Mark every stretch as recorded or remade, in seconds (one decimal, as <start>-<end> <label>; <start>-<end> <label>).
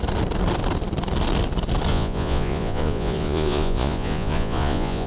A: 0.0-1.9 recorded; 1.9-5.1 remade